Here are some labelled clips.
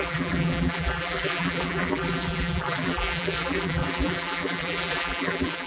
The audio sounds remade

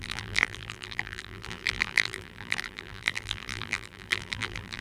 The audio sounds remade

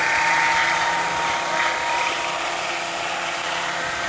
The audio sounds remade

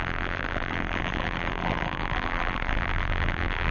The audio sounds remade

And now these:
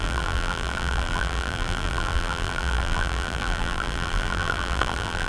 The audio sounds remade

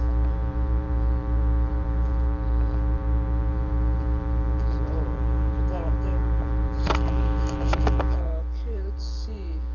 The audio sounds remade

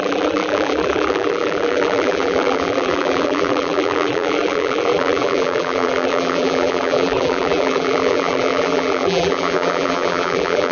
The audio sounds remade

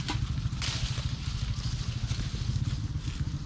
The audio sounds recorded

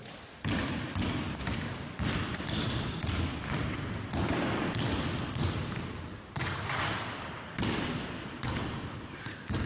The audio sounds remade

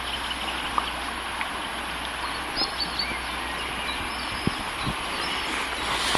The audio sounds recorded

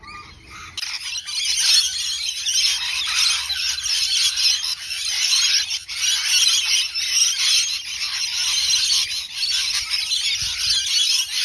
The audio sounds recorded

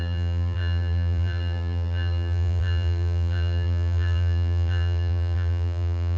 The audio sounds remade